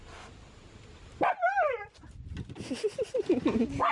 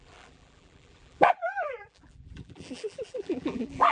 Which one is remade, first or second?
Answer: second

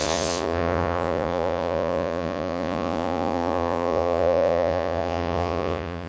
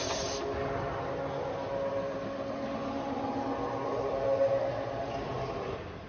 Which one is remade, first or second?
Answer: first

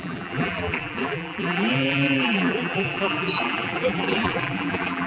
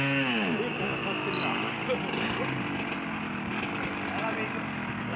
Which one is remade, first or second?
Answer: first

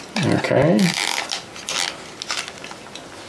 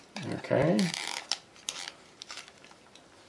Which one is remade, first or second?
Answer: second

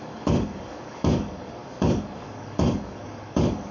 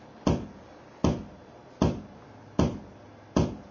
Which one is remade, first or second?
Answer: first